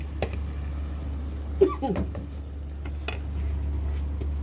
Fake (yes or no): no